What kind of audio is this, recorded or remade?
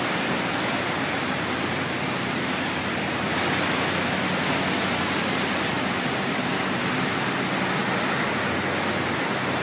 recorded